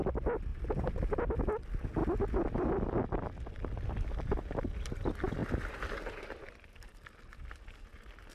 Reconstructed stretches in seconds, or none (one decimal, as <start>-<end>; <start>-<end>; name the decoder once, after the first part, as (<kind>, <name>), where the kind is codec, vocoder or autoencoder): 0.5-1.2 (vocoder, BigVGAN v2); 5.4-6.9